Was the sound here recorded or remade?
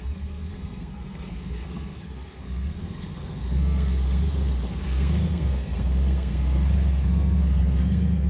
remade